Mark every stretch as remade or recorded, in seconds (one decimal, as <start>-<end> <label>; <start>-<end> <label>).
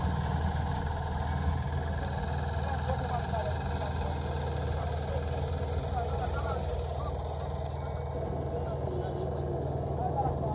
0.0-10.5 recorded